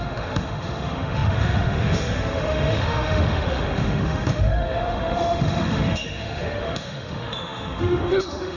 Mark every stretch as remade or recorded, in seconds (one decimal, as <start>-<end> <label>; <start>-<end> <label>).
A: 0.0-8.6 remade